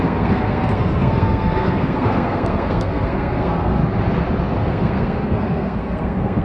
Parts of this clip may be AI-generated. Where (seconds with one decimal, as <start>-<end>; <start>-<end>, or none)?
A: 0.0-3.8; 4.6-6.4